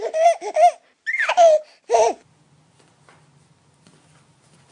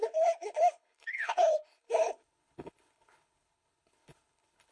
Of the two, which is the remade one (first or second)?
second